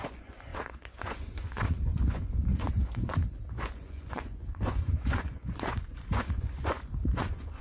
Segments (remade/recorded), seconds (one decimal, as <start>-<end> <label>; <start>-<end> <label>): 0.0-7.6 remade